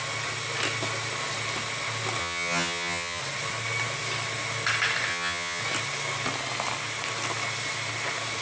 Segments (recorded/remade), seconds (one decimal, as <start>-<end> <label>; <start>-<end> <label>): 0.0-2.2 recorded; 2.2-3.2 remade; 3.2-5.1 recorded; 5.1-5.6 remade; 5.6-8.4 recorded